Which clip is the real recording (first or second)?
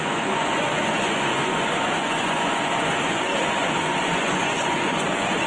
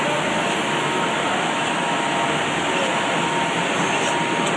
second